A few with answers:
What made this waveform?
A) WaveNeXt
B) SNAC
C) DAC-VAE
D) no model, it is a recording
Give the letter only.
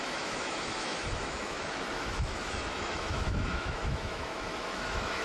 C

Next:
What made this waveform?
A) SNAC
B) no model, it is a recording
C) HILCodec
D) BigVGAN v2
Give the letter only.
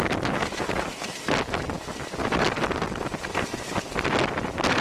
B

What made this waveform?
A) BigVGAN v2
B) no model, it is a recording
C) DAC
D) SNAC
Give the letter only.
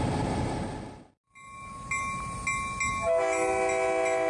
B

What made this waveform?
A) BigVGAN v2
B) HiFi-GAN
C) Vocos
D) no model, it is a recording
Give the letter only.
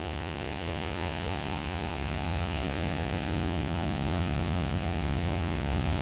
C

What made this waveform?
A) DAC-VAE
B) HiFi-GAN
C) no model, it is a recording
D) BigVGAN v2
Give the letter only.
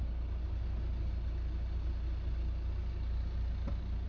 C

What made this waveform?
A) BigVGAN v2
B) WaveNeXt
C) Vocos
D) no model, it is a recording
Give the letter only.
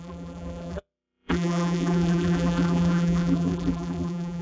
A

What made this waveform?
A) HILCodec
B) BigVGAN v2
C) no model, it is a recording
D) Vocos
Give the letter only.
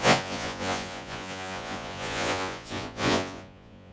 D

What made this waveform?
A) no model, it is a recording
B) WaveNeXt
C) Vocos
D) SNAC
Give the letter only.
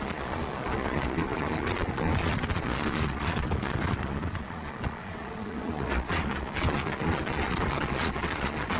C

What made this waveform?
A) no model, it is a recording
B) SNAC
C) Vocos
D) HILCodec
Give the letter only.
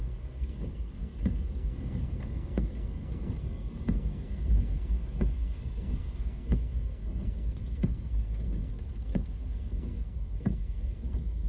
B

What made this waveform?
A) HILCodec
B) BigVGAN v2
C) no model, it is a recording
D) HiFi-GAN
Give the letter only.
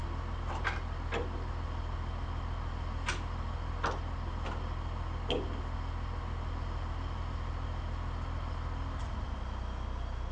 C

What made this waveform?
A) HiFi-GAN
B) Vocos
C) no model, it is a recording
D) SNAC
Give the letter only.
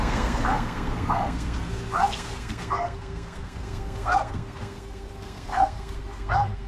D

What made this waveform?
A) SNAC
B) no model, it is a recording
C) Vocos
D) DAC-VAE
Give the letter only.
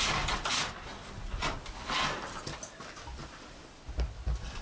B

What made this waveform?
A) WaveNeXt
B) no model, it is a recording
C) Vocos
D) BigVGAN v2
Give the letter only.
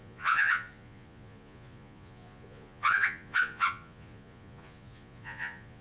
C